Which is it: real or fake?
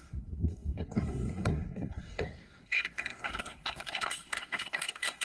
fake